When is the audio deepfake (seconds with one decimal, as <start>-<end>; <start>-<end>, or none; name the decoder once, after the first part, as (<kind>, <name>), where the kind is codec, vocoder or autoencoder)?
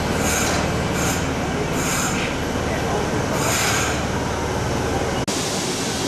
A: none